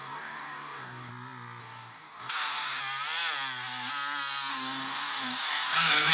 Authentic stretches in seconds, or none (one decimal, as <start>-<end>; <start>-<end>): 1.1-1.6; 2.8-4.5